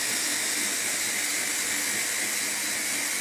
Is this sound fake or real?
real